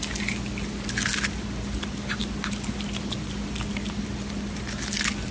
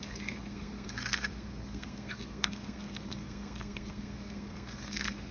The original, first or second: first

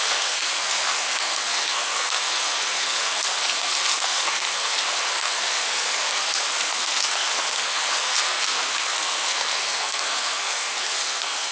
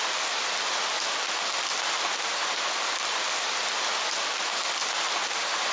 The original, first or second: second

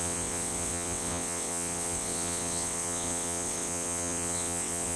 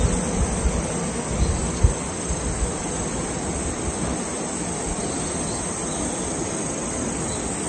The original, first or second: second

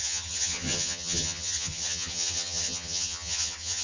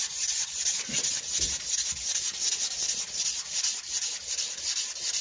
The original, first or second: second